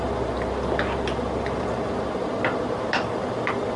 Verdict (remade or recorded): recorded